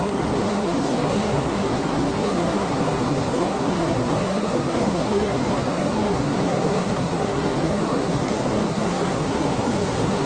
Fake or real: fake